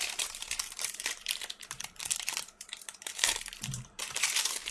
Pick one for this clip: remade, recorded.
remade